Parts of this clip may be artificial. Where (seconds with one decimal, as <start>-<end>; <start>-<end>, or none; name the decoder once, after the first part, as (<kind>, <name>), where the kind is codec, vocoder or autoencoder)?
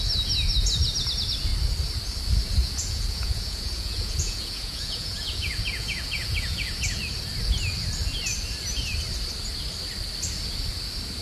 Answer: 2.6-7.0 (vocoder, Vocos)